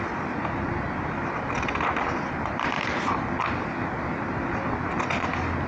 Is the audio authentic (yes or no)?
yes